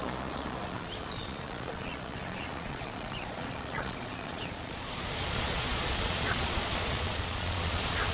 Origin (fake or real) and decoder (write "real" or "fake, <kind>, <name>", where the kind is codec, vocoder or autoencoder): fake, vocoder, Vocos